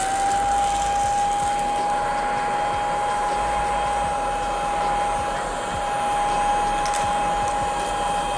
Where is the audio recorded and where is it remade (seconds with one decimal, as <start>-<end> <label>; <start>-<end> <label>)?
0.0-8.4 recorded